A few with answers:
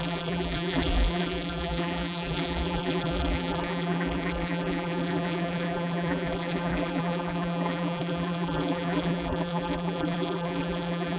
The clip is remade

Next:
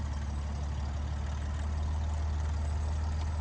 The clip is recorded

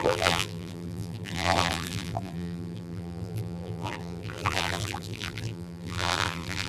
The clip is remade